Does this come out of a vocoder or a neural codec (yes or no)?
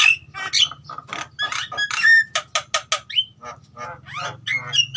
no